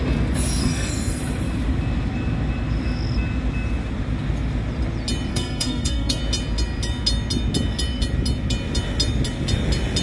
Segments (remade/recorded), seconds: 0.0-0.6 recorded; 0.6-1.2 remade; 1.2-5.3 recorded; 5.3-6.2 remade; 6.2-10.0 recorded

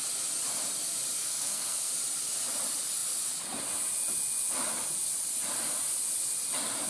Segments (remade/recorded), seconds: 0.0-1.2 recorded; 1.2-1.9 remade; 1.9-6.9 recorded